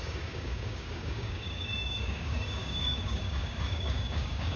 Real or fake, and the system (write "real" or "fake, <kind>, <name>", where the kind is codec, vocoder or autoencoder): fake, codec, DAC